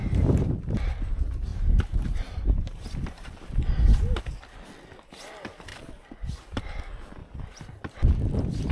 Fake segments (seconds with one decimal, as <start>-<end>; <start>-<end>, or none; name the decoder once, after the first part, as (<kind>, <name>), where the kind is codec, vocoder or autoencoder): 0.0-1.1 (vocoder, BigVGAN v2); 1.5-3.5; 5.7-6.7